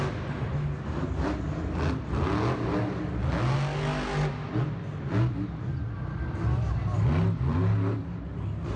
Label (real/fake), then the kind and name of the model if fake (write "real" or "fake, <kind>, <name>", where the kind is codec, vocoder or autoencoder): real